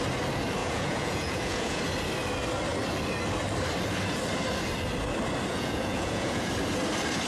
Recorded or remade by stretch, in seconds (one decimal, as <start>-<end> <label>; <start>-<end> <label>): 0.0-0.6 recorded; 0.6-1.8 remade; 1.8-5.5 recorded; 5.5-6.5 remade; 6.5-7.3 recorded